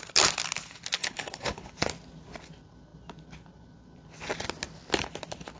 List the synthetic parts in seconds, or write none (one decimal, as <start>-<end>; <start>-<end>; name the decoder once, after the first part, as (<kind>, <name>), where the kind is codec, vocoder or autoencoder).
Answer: 1.0-1.7 (codec, HILCodec)